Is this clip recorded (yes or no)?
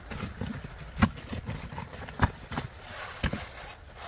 yes